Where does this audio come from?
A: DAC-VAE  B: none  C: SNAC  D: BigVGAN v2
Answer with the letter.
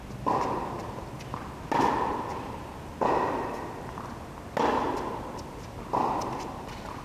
B